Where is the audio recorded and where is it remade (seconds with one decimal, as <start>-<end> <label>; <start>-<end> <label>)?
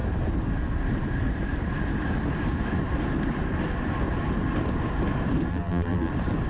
0.0-5.5 recorded; 5.5-6.1 remade; 6.1-6.5 recorded